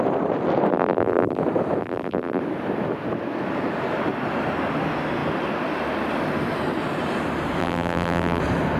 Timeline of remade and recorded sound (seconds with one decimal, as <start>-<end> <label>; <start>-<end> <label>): 0.0-0.7 recorded; 0.7-1.4 remade; 1.4-1.8 recorded; 1.8-2.4 remade; 2.4-7.6 recorded; 7.6-8.4 remade; 8.4-8.8 recorded